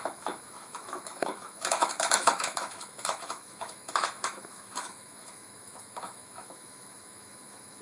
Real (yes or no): no